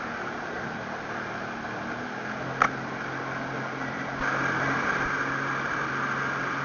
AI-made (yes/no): no